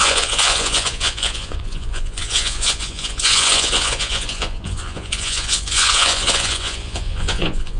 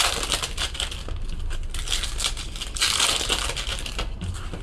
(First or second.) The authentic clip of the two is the second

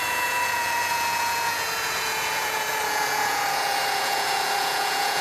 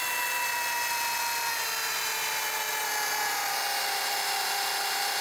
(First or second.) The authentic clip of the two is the second